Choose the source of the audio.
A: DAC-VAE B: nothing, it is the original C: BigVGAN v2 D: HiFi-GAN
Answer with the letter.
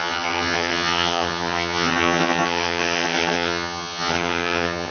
D